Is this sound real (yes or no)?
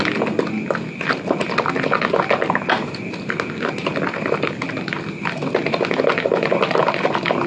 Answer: yes